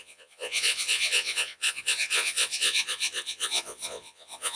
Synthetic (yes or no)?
yes